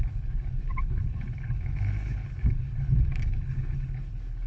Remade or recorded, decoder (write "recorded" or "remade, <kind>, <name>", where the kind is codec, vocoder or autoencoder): remade, codec, HILCodec